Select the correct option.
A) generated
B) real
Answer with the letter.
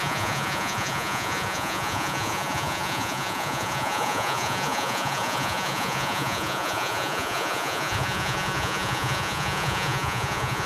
A